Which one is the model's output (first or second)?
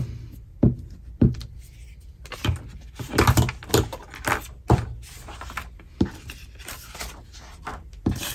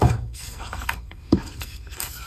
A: second